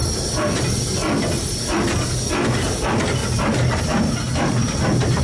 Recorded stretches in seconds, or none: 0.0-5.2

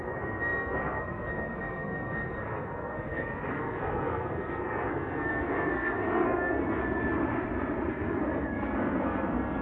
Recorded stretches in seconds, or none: 6.8-7.9

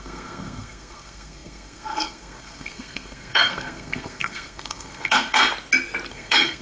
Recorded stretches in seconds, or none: 5.4-6.1

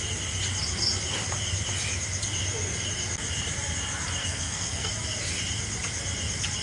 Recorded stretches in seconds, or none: 0.0-4.2; 4.9-6.6

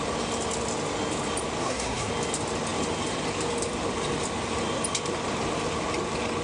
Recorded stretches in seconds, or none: 0.0-1.6; 2.1-6.4

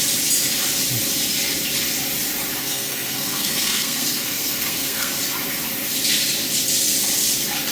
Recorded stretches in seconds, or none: 0.0-2.6; 5.1-7.7

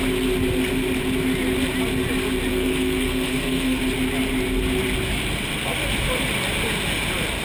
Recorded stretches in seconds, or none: 0.0-2.5; 3.8-7.4